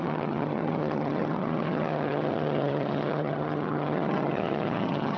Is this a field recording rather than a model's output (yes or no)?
no